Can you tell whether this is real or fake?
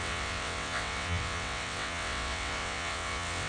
fake